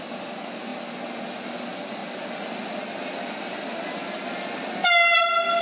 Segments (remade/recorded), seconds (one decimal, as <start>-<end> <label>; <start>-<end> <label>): 0.0-5.6 recorded